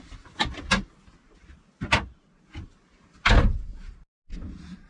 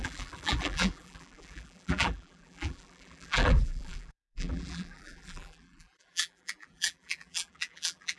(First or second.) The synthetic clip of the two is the second